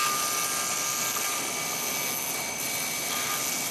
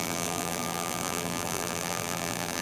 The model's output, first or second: second